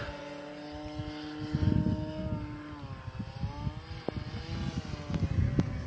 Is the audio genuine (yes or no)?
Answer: yes